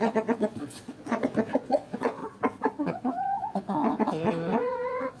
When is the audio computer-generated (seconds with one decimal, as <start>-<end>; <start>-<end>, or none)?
0.0-2.2; 2.8-5.2